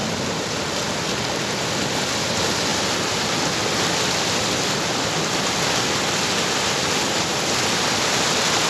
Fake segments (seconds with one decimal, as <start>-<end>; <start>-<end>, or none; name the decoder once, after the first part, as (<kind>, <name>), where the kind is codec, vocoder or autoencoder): none